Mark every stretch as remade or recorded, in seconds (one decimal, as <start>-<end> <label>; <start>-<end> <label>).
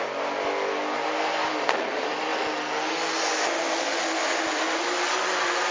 0.0-5.7 recorded